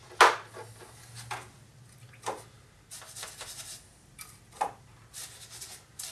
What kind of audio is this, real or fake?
real